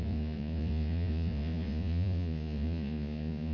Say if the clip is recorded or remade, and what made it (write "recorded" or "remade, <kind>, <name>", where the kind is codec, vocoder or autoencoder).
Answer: remade, vocoder, Vocos